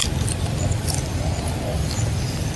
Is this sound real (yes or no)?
yes